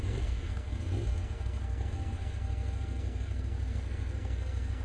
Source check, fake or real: fake